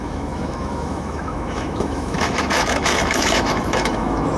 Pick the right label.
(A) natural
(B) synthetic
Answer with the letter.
B